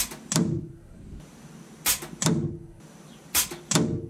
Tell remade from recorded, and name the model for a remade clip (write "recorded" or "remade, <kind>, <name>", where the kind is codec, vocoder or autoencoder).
recorded